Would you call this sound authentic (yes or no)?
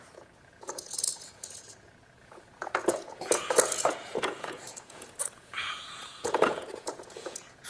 no